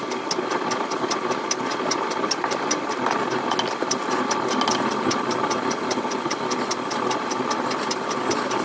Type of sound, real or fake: real